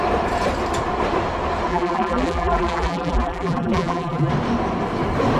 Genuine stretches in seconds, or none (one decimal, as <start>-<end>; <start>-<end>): 0.0-1.7; 4.3-5.4